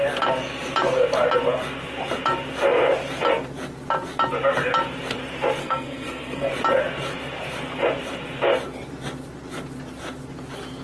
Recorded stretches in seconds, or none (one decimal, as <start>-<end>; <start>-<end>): 0.0-5.6; 6.5-10.8